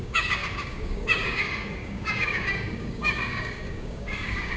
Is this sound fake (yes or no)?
yes